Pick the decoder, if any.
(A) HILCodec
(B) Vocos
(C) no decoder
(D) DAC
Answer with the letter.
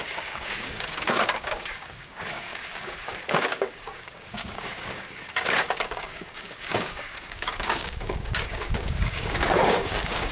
D